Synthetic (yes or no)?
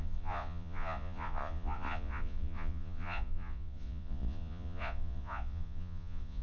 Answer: yes